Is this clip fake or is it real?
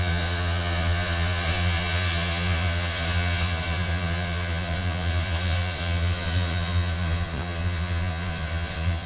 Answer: fake